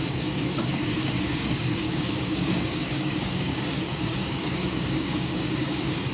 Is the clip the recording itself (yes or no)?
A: no